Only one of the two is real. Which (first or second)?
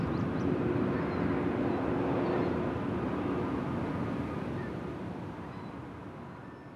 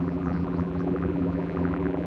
first